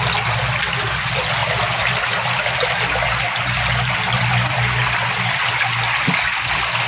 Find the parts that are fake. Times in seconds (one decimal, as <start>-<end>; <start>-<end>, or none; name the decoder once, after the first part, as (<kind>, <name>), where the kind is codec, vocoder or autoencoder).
none